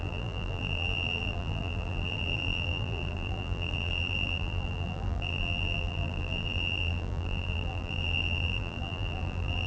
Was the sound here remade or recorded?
remade